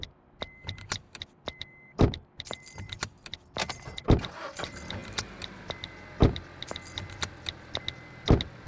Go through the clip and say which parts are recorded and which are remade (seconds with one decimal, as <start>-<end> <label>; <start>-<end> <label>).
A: 0.0-5.0 remade; 5.0-8.7 recorded